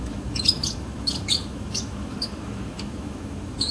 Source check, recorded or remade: remade